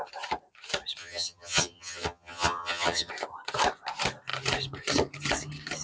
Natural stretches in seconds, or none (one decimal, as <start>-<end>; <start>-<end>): 0.0-1.0; 3.1-5.8